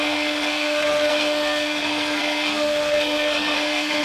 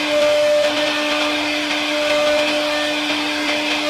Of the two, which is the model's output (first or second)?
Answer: first